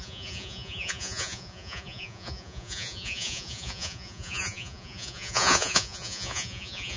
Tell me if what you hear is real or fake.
fake